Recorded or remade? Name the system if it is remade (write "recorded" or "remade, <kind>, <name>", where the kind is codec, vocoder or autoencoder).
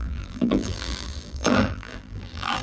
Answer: remade, vocoder, BigVGAN v2